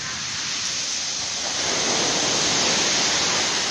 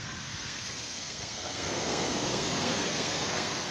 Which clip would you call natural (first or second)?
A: first